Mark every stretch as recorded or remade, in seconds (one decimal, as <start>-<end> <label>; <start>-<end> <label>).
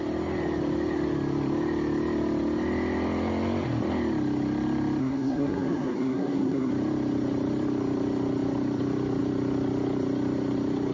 0.0-5.0 recorded; 5.0-6.7 remade; 6.7-10.9 recorded